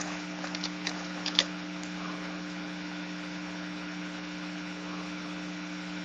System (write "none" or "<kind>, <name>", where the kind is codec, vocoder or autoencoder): codec, HILCodec